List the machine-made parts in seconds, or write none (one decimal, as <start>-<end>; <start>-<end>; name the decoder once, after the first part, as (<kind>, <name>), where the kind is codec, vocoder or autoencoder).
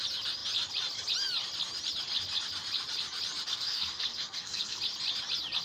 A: 3.5-4.8 (codec, SNAC)